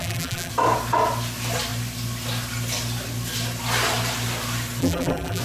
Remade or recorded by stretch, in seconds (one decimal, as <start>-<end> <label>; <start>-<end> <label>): 0.0-0.5 remade; 0.5-4.8 recorded; 4.8-5.4 remade